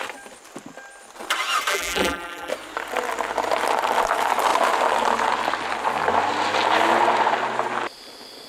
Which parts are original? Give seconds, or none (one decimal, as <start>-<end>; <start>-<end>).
0.0-1.7; 2.5-8.5